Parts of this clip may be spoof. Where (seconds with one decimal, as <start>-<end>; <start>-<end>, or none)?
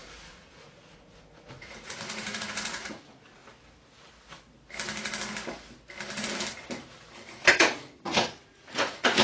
0.0-3.4; 7.5-9.2